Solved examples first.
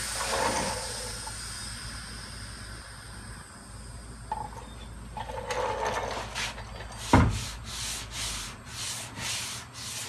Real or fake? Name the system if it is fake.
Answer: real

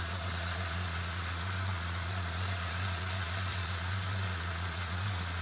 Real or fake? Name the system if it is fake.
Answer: fake, vocoder, Vocos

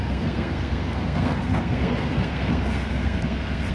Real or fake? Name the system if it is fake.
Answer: fake, codec, SNAC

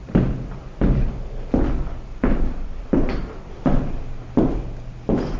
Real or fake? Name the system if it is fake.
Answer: real